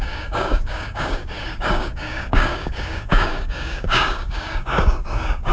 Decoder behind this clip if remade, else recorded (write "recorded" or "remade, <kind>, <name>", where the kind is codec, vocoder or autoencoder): remade, codec, DAC